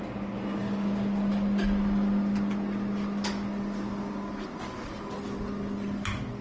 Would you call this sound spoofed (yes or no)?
no